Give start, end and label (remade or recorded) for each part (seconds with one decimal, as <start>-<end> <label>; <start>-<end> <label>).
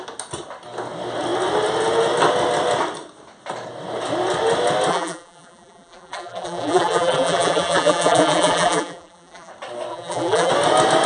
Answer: 0.0-4.9 recorded; 4.9-9.5 remade; 9.5-9.9 recorded; 9.9-10.5 remade; 10.5-11.1 recorded